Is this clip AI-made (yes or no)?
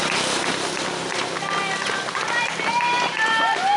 no